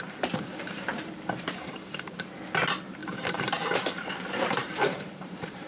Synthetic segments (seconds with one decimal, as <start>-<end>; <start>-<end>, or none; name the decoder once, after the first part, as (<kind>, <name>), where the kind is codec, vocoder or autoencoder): 0.5-2.4 (vocoder, BigVGAN v2); 3.0-5.7

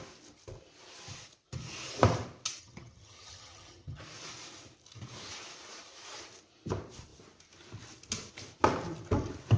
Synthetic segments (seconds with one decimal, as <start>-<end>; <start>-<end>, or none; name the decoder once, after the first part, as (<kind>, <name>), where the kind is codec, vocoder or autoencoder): 2.6-4.0 (vocoder, HiFi-GAN)